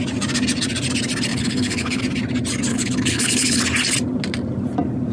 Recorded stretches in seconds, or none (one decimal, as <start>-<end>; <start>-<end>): 0.0-1.3; 2.0-2.7; 3.6-5.1